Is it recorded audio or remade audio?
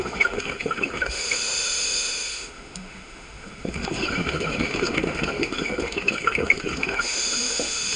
remade